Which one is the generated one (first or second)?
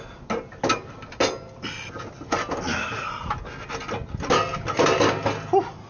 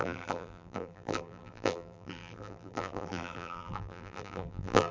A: second